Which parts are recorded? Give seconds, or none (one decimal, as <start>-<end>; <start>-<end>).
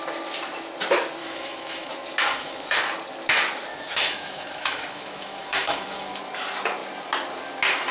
0.0-1.2; 1.9-2.3; 2.8-3.7; 6.2-7.9